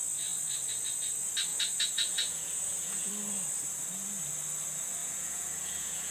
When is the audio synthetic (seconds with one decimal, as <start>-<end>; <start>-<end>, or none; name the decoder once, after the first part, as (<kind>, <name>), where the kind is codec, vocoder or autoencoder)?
1.5-3.1 (vocoder, Vocos); 5.0-6.1